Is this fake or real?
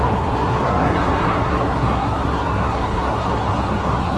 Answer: fake